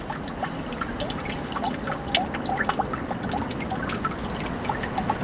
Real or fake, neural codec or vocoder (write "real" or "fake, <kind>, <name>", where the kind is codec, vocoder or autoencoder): real